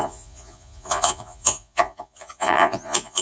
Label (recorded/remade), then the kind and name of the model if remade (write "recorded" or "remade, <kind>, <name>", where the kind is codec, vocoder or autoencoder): remade, vocoder, Vocos